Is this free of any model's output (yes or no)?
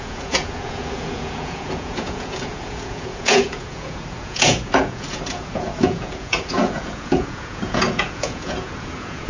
no